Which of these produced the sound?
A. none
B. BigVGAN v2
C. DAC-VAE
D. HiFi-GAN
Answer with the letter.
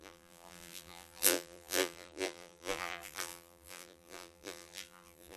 B